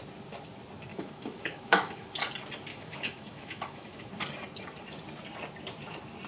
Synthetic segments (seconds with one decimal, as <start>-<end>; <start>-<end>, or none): 0.9-2.1; 2.7-4.1